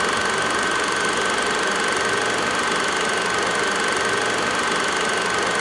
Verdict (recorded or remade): recorded